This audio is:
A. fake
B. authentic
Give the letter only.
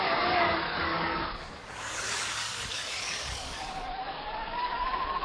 A